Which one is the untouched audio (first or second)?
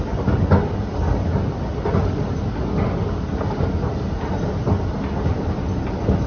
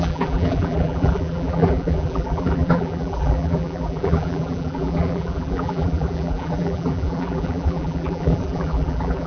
first